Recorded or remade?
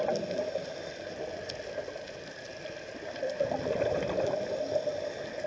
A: recorded